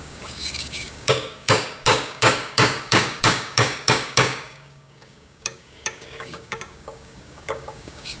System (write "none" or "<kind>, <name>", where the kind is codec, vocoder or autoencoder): codec, DAC